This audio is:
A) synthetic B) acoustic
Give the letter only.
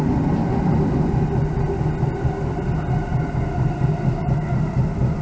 B